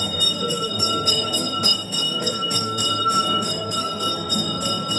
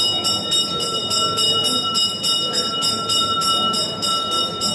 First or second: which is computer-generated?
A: first